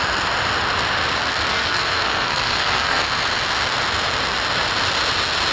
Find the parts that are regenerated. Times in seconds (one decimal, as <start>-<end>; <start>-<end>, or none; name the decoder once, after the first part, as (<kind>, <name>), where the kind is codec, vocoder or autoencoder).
1.5-3.0 (codec, SNAC)